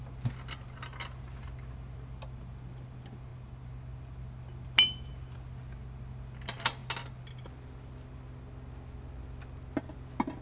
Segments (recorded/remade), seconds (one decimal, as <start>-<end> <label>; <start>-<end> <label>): 0.0-10.4 recorded